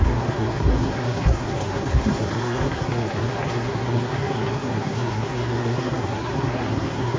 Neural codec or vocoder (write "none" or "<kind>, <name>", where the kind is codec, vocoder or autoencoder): codec, SNAC